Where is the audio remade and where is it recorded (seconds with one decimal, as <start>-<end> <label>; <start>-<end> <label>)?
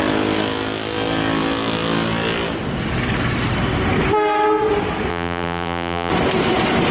0.0-5.1 recorded; 5.1-6.1 remade; 6.1-6.9 recorded